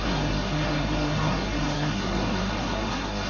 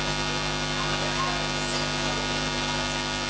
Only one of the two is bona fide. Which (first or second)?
second